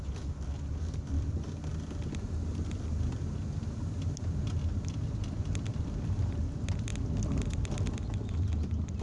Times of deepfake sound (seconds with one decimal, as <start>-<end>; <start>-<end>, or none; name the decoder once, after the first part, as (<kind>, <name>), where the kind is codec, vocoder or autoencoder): 0.0-1.7 (vocoder, BigVGAN v2); 4.9-6.9